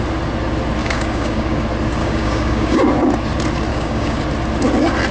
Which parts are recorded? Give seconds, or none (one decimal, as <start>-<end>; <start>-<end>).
0.0-0.8; 1.6-2.0; 2.8-3.7; 4.2-5.1